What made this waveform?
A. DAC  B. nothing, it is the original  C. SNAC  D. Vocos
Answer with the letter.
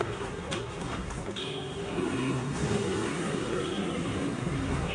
C